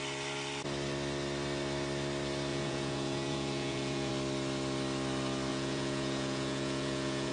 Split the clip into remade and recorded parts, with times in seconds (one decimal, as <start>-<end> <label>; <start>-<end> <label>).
0.0-2.5 recorded; 2.5-4.1 remade; 4.1-5.5 recorded; 5.5-7.3 remade